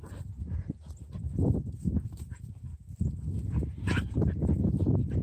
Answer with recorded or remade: recorded